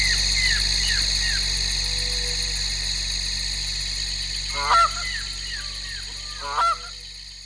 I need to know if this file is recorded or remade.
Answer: recorded